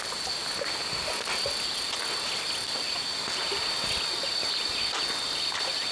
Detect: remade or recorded recorded